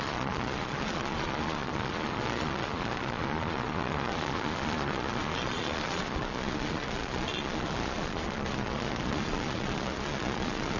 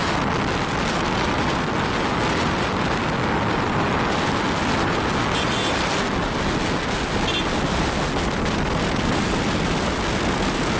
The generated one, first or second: first